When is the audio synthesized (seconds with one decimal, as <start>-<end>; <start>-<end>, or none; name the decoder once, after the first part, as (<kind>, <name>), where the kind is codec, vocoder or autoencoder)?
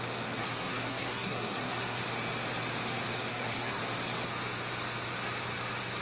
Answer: 0.4-2.0 (codec, SNAC); 3.3-3.8